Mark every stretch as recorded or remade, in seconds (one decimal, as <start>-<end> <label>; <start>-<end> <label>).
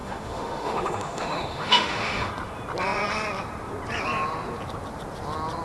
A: 0.0-2.3 remade; 2.3-5.6 recorded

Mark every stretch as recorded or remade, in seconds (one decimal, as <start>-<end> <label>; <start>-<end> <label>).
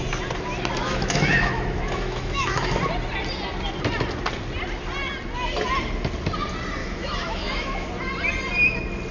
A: 0.0-0.8 recorded; 0.8-2.8 remade; 2.8-6.8 recorded; 6.8-7.9 remade; 7.9-9.1 recorded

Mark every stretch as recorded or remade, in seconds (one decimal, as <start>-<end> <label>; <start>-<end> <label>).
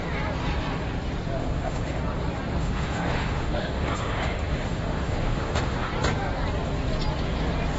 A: 0.0-1.4 recorded; 1.4-2.0 remade; 2.0-2.6 recorded; 2.6-5.9 remade; 5.9-7.8 recorded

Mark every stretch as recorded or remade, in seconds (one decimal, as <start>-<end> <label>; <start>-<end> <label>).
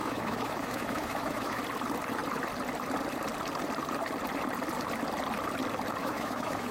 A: 0.0-1.6 remade; 1.6-6.0 recorded; 6.0-6.7 remade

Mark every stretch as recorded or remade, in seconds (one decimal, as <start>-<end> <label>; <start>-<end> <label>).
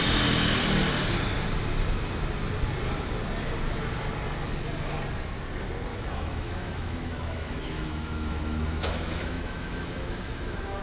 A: 0.0-5.9 recorded; 5.9-10.8 remade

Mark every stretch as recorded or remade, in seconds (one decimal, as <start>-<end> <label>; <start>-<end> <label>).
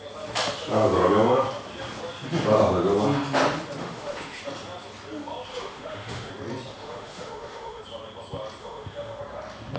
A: 0.0-3.8 recorded; 3.8-4.4 remade; 4.4-5.5 recorded; 5.5-6.3 remade; 6.3-6.7 recorded; 6.7-7.8 remade; 7.8-8.6 recorded; 8.6-9.2 remade; 9.2-9.8 recorded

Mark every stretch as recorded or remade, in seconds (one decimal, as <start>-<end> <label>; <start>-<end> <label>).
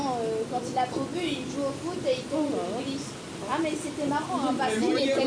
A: 0.0-5.3 recorded